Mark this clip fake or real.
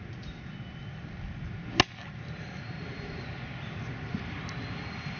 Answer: real